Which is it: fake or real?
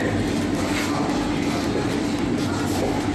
real